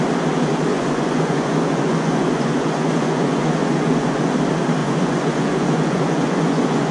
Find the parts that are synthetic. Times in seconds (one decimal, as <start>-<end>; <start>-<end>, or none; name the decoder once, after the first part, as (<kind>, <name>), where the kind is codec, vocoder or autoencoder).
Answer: 0.7-4.3 (vocoder, Vocos); 4.8-6.9